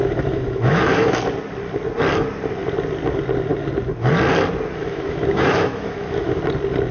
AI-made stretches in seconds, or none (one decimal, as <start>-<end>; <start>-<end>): 0.0-1.1; 4.8-6.4